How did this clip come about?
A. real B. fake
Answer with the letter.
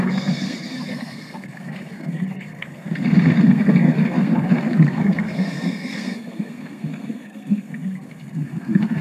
B